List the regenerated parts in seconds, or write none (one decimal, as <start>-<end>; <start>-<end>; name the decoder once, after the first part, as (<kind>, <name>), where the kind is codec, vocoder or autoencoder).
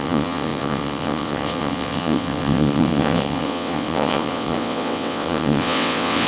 0.0-6.3 (vocoder, WaveNeXt)